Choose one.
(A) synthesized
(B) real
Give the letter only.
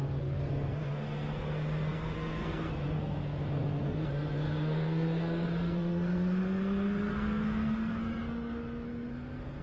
A